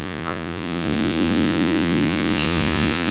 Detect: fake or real fake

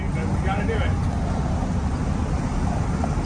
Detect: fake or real real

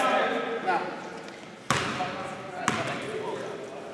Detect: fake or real real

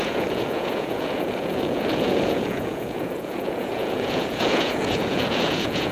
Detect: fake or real fake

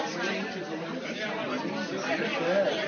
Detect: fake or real real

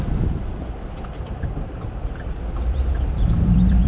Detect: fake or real fake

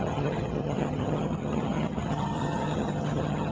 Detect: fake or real fake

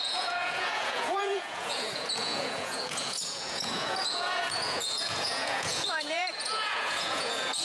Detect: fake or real fake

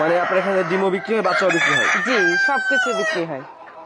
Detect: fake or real real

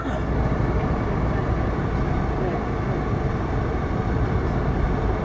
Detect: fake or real real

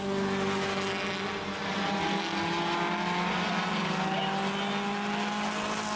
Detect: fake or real real